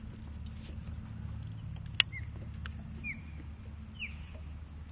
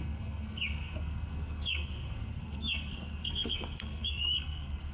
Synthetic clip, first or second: second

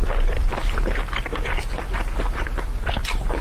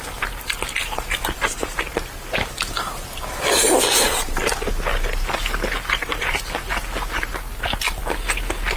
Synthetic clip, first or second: first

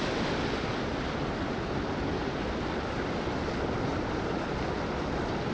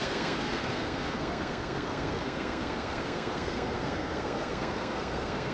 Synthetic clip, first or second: second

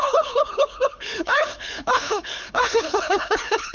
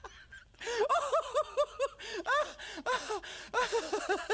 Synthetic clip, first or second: first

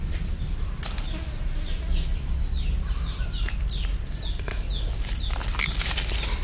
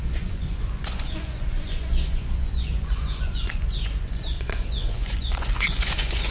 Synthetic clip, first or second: second